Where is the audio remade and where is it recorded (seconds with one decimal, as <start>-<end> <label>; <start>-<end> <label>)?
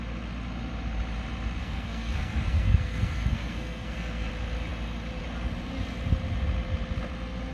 0.0-1.6 recorded; 1.6-4.3 remade; 4.3-7.5 recorded